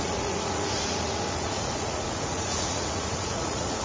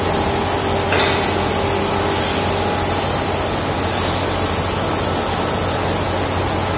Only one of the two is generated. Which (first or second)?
first